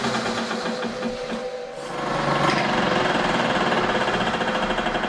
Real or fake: real